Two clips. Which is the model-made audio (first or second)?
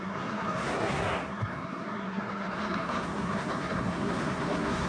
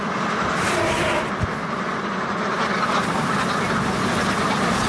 first